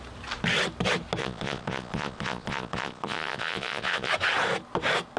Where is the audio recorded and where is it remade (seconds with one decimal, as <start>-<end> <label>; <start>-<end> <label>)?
0.0-1.2 recorded; 1.2-4.1 remade; 4.1-5.2 recorded

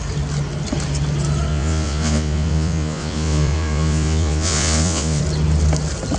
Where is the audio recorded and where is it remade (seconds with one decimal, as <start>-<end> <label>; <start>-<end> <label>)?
0.0-1.5 recorded; 1.5-5.2 remade; 5.2-6.2 recorded

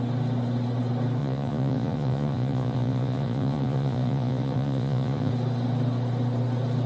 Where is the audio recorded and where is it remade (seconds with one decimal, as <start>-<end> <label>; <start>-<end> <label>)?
0.0-1.2 recorded; 1.2-5.3 remade; 5.3-6.9 recorded

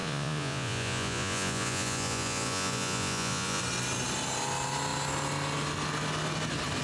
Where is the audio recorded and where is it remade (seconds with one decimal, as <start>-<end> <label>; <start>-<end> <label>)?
0.0-3.6 remade; 3.6-6.8 recorded

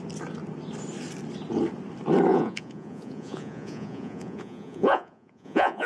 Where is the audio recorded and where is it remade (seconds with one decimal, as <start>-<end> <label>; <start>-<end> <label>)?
0.0-2.3 recorded; 2.3-5.9 remade

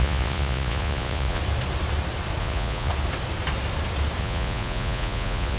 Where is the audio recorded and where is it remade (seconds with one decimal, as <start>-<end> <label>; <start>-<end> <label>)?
0.0-1.4 remade; 1.4-2.4 recorded; 2.4-2.9 remade; 2.9-4.2 recorded; 4.2-5.6 remade